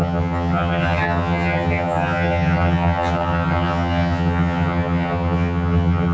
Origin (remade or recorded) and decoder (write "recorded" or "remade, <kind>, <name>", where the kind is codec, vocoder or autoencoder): remade, vocoder, HiFi-GAN